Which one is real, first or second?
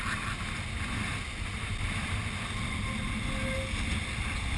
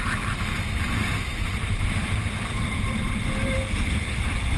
first